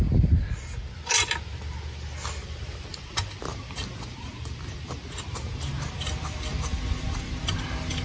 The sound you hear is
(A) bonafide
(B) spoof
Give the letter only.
A